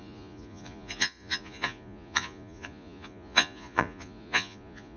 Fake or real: fake